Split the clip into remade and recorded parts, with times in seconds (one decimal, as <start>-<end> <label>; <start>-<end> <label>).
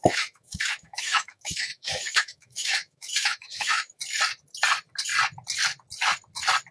0.0-4.0 remade; 4.0-6.7 recorded